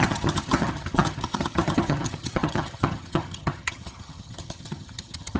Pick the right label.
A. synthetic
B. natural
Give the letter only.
A